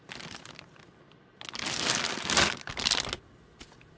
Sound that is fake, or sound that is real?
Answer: real